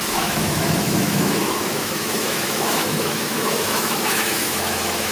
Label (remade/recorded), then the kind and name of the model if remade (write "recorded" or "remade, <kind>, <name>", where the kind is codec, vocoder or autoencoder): remade, autoencoder, DAC-VAE